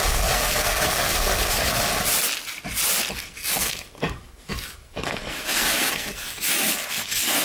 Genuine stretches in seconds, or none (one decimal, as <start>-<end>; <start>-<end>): 1.9-3.1